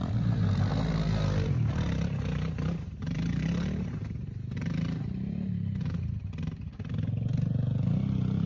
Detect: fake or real real